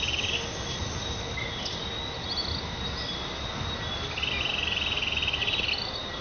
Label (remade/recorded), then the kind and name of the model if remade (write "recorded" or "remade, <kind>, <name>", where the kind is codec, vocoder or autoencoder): recorded